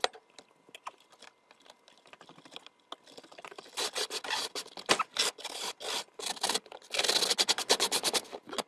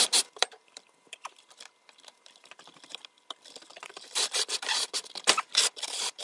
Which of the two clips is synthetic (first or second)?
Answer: second